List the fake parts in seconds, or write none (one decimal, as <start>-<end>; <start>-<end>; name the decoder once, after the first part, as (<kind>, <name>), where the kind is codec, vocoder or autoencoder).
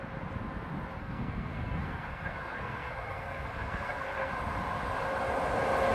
1.0-4.3 (codec, SNAC)